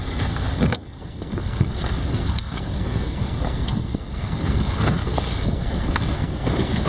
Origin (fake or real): fake